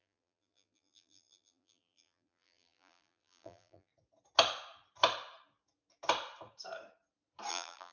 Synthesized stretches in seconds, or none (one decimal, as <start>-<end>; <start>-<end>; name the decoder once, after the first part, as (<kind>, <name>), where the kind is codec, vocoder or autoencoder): 0.0-3.9 (vocoder, BigVGAN v2); 7.5-7.9

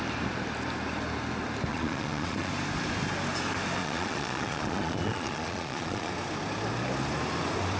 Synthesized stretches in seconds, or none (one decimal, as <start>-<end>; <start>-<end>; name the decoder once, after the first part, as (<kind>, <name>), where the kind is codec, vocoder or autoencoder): 1.7-2.5 (vocoder, Vocos); 3.8-6.1

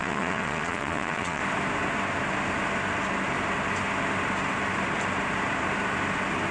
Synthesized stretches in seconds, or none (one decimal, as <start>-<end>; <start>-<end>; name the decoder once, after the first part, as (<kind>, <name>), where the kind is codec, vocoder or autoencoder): 0.0-1.4 (vocoder, Vocos)

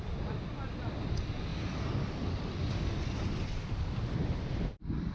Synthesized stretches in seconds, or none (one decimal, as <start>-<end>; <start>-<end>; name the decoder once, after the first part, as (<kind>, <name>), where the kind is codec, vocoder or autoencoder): none

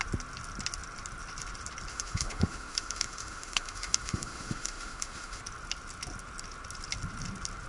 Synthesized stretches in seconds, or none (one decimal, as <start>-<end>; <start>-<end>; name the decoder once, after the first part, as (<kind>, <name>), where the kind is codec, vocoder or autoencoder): 1.9-5.4 (autoencoder, DAC-VAE)

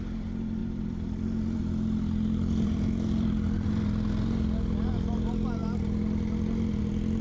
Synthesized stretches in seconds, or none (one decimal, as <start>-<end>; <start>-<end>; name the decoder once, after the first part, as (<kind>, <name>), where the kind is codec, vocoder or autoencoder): 0.6-3.7 (vocoder, BigVGAN v2)

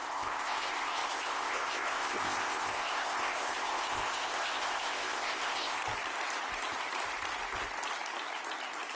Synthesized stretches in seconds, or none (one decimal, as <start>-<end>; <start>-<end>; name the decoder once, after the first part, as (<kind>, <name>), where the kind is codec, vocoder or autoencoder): 0.0-5.8 (codec, ZipCodec)